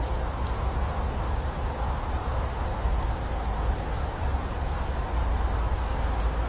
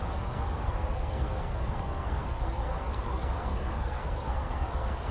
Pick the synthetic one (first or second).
second